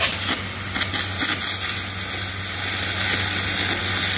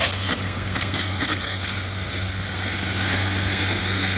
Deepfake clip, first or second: second